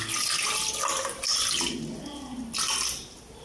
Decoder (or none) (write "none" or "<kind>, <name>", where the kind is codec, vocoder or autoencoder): none